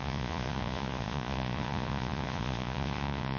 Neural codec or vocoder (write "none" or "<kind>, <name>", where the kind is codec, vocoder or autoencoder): vocoder, Vocos